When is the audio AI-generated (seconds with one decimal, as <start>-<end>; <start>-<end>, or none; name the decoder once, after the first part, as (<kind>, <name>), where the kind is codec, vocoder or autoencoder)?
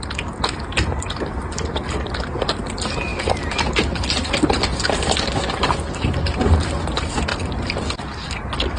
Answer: none